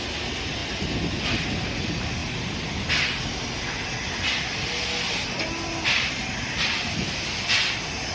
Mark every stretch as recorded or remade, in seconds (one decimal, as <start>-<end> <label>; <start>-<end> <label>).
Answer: 0.0-8.1 recorded